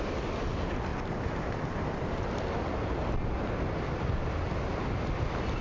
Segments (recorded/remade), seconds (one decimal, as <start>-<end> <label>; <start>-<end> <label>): 0.0-5.6 recorded